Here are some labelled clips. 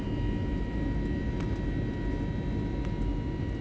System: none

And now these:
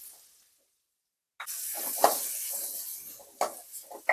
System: none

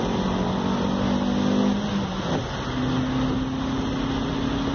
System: none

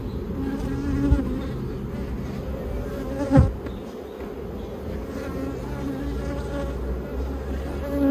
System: none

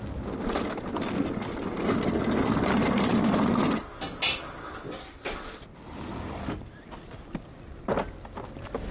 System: none